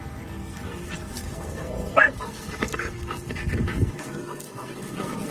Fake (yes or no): yes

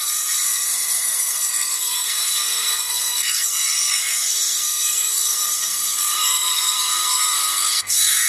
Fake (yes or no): yes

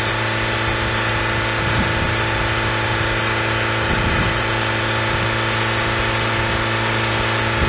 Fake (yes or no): no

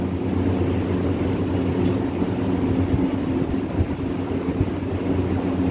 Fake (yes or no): no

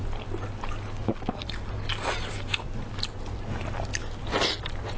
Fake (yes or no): no